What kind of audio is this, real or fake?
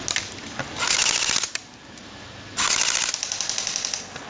real